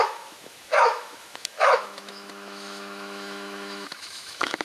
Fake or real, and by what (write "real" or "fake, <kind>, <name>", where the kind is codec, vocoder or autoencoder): fake, autoencoder, DAC-VAE